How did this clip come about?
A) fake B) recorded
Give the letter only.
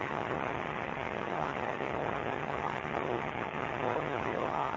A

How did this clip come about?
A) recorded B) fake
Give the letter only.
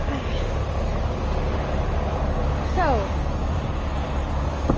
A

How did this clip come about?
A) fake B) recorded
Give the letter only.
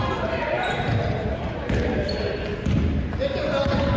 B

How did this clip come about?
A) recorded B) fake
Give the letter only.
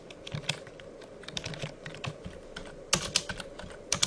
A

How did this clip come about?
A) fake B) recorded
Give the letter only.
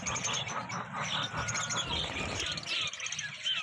B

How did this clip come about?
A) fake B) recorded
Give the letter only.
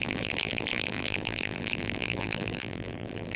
A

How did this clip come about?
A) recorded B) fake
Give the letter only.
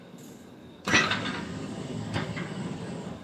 B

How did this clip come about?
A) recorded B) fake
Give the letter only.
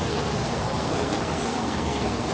B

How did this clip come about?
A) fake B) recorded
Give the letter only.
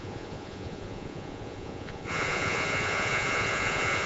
A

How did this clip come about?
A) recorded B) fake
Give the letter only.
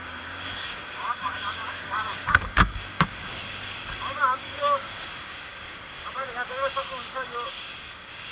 B